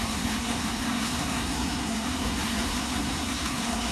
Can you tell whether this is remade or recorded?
remade